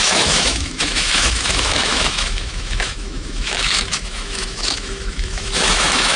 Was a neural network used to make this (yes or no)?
yes